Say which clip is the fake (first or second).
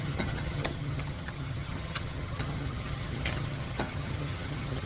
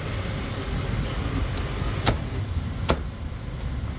first